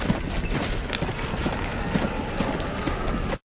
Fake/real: real